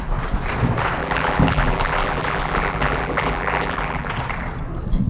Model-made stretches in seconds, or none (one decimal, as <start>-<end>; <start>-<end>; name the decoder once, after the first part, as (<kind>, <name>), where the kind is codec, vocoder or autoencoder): 1.0-4.1 (vocoder, BigVGAN v2)